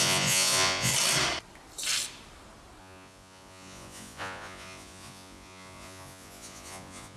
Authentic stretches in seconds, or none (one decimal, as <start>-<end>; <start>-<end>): 0.9-2.8